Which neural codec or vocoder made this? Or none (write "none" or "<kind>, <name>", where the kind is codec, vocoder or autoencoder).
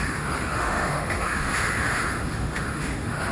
autoencoder, DAC-VAE